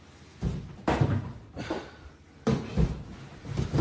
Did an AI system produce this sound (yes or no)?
no